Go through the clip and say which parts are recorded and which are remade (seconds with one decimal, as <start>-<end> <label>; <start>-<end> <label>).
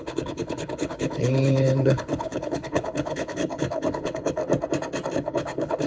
0.0-4.4 remade; 4.4-5.1 recorded; 5.1-5.9 remade